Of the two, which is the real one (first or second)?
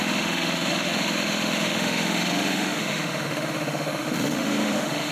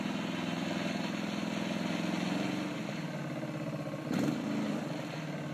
second